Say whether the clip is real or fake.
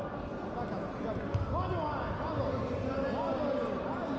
real